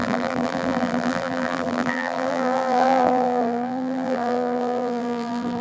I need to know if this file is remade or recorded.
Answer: remade